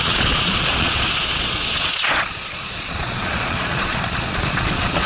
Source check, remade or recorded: remade